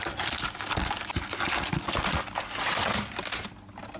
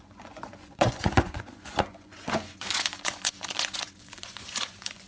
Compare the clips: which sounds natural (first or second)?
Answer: first